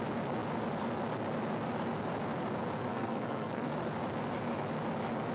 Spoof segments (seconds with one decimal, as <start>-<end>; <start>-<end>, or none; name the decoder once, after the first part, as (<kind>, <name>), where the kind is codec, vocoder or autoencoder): 2.8-3.7 (codec, SNAC)